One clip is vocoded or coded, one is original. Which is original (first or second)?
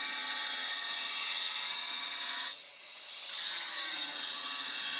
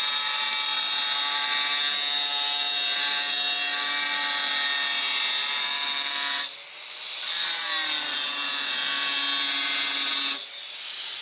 second